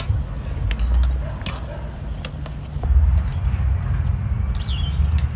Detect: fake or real real